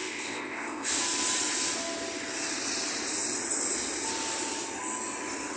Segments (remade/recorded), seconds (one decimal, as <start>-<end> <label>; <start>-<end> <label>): 0.0-0.9 remade; 0.9-5.6 recorded